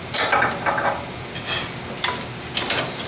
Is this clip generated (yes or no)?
no